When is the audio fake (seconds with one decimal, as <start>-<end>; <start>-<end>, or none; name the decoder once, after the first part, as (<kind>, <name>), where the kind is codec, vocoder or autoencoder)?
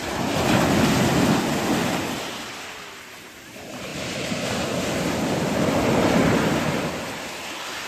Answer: none